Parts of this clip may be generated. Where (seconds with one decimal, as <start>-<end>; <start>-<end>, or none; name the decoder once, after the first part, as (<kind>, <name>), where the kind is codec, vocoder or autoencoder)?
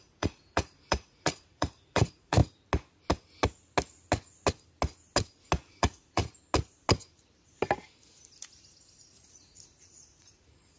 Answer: 0.0-2.4 (vocoder, Vocos); 5.7-6.2; 9.1-10.8